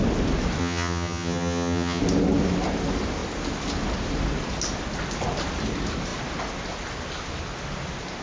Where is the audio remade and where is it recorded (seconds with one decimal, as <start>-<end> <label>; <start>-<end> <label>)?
0.0-0.6 recorded; 0.6-2.0 remade; 2.0-8.2 recorded